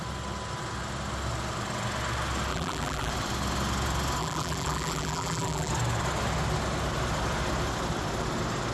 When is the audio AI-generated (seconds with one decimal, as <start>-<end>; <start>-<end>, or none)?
2.5-3.1; 4.2-5.7